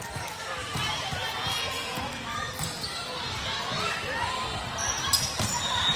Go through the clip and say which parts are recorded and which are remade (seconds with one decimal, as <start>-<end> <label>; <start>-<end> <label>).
0.0-1.2 recorded; 1.2-2.0 remade; 2.0-6.0 recorded